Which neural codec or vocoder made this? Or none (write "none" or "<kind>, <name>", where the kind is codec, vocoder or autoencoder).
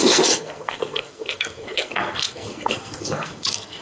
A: codec, SNAC